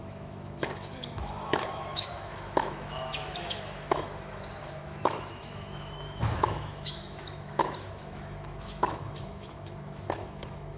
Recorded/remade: remade